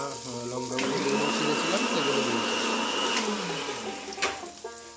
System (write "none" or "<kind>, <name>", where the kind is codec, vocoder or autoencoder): none